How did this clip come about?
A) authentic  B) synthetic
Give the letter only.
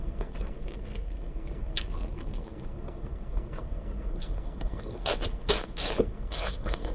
B